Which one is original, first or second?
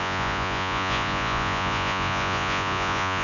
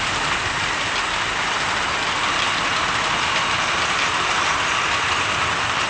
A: second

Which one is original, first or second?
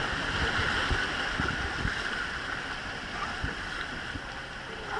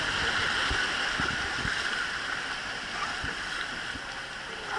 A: second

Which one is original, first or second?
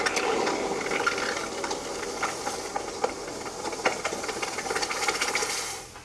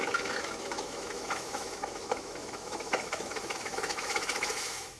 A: first